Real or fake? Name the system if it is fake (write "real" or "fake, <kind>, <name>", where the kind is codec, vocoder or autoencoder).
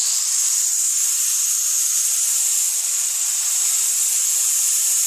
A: real